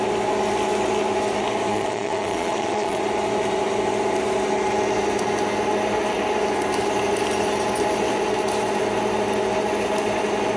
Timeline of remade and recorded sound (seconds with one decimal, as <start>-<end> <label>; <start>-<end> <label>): 0.0-1.7 recorded; 1.7-3.0 remade; 3.0-10.6 recorded